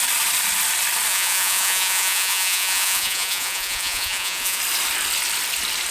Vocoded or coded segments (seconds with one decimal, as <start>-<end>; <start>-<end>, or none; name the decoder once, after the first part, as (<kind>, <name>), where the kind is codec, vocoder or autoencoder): 1.1-4.6 (vocoder, Vocos)